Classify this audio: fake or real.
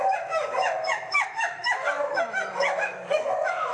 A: fake